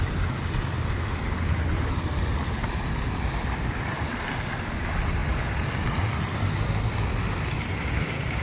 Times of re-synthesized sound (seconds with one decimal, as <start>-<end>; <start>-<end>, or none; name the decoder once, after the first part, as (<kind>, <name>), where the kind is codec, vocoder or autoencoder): 0.0-5.2 (vocoder, BigVGAN v2); 7.6-8.4